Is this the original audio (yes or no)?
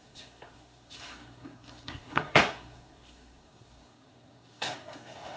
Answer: no